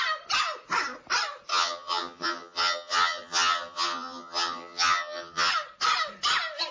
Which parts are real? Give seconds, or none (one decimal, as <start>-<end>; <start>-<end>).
0.0-1.5; 5.5-6.7